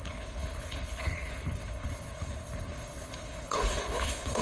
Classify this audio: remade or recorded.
remade